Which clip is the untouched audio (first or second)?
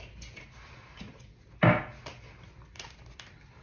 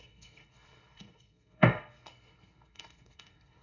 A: first